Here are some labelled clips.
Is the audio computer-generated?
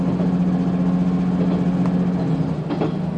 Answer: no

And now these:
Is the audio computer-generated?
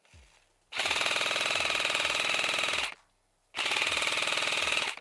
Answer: no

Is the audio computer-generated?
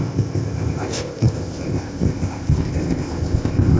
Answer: yes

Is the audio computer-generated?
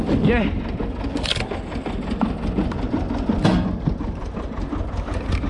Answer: no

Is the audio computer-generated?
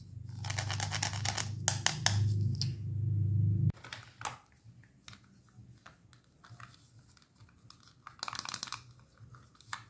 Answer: no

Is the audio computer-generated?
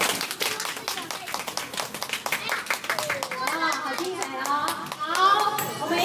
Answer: no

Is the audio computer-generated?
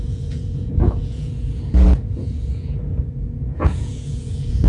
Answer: yes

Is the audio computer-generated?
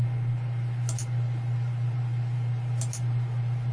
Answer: no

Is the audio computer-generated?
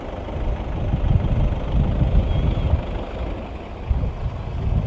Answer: no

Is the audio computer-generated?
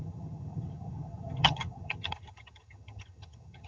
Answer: yes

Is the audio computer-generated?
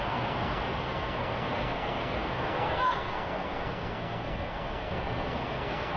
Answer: yes